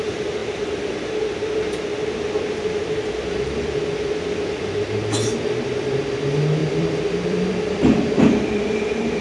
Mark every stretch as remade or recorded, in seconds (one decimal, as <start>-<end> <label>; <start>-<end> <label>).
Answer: 0.0-0.4 recorded; 0.4-1.1 remade; 1.1-2.8 recorded; 2.8-4.6 remade; 4.6-6.6 recorded; 6.6-9.2 remade